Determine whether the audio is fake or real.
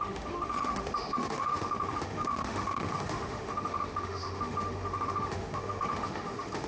fake